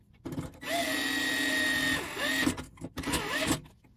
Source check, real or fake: real